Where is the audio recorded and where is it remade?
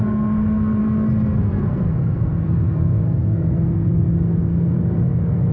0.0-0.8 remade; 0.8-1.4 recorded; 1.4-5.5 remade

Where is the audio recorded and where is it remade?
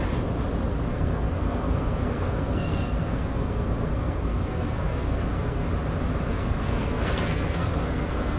0.0-0.7 recorded; 0.7-5.7 remade; 5.7-6.3 recorded; 6.3-8.4 remade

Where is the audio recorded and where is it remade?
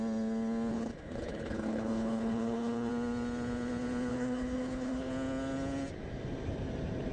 0.0-0.7 recorded; 0.7-2.9 remade; 2.9-4.1 recorded; 4.1-5.1 remade; 5.1-7.1 recorded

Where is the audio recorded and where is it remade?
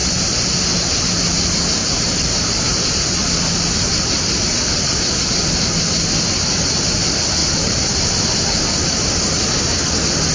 0.0-0.5 remade; 0.5-1.8 recorded; 1.8-2.9 remade; 2.9-7.4 recorded; 7.4-8.2 remade; 8.2-10.3 recorded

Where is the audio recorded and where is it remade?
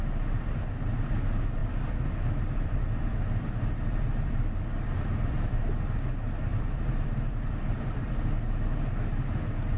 0.0-1.6 recorded; 1.6-5.6 remade; 5.6-6.5 recorded; 6.5-8.1 remade; 8.1-9.8 recorded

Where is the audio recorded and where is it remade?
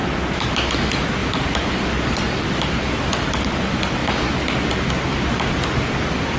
0.0-6.4 recorded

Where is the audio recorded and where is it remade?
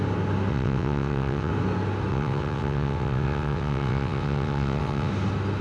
0.0-0.5 recorded; 0.5-1.5 remade; 1.5-2.1 recorded; 2.1-5.1 remade; 5.1-5.6 recorded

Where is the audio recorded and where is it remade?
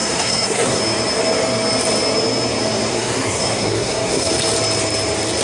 0.0-0.8 remade; 0.8-2.9 recorded; 2.9-4.3 remade; 4.3-5.4 recorded